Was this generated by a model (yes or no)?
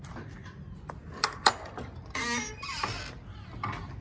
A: no